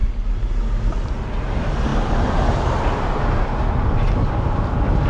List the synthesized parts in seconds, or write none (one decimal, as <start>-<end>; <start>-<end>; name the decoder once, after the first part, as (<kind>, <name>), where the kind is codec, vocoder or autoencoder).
none